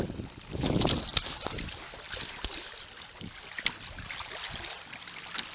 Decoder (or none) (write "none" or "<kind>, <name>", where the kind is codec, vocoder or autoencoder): none